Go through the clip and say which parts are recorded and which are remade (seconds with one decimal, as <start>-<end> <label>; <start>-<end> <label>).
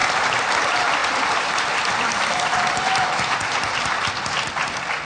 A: 0.0-0.6 remade; 0.6-1.0 recorded; 1.0-4.1 remade; 4.1-5.1 recorded